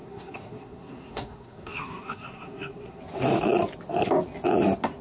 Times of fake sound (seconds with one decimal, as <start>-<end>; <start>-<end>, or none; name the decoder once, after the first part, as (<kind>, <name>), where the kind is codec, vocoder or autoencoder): 0.0-3.0 (codec, SNAC)